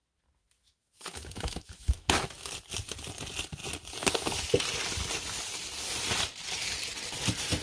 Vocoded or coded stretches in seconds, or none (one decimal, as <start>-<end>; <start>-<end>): 0.0-2.5